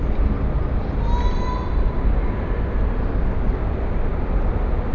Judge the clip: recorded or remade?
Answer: recorded